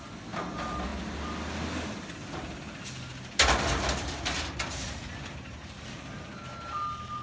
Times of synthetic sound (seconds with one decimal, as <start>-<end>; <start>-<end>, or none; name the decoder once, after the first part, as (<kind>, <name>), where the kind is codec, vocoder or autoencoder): none